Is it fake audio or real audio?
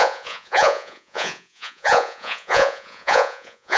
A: fake